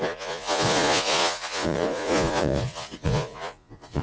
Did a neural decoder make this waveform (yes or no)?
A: yes